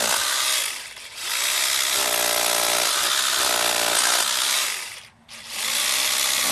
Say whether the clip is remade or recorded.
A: recorded